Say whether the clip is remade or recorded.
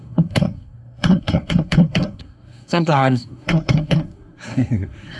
remade